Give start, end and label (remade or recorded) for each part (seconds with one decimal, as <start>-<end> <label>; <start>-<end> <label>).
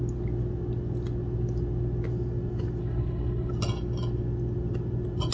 0.0-2.8 recorded; 2.8-3.5 remade; 3.5-5.3 recorded